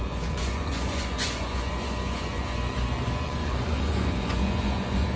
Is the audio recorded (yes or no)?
no